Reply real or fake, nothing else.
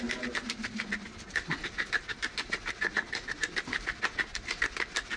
real